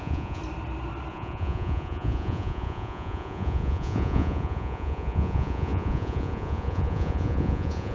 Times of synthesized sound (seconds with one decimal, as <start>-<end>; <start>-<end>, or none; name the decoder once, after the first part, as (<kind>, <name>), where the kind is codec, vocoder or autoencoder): 0.0-0.4 (vocoder, Vocos); 1.1-7.9